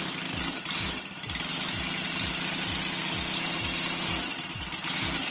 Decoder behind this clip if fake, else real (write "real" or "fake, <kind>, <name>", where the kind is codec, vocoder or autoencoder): real